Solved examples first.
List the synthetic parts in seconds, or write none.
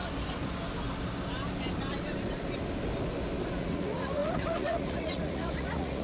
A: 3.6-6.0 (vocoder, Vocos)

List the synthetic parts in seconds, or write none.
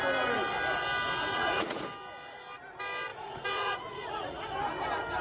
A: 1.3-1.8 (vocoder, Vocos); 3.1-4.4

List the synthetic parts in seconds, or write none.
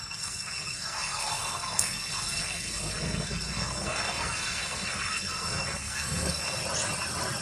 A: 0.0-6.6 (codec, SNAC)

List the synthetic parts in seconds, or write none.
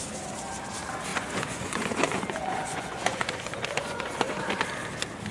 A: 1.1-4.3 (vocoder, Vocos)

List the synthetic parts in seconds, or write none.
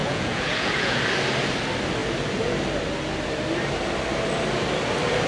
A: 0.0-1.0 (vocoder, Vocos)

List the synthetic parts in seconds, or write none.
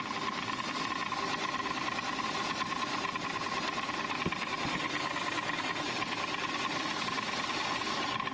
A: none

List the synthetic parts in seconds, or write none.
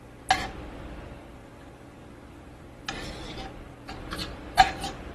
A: 1.4-2.7 (vocoder, BigVGAN v2); 4.2-5.1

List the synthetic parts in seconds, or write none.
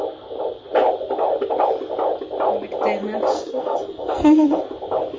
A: 3.3-4.6 (codec, SNAC)